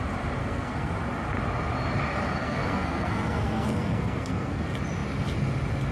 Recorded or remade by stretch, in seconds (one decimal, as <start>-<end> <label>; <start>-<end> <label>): 0.0-0.4 recorded; 0.4-0.9 remade; 0.9-2.4 recorded; 2.4-4.6 remade; 4.6-5.9 recorded